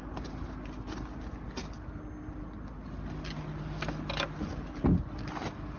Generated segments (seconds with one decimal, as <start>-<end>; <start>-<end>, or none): none